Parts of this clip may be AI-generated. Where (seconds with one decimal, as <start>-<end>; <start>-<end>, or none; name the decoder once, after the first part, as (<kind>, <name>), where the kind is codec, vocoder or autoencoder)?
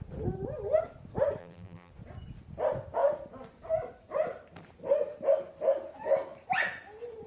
1.4-1.9 (vocoder, BigVGAN v2)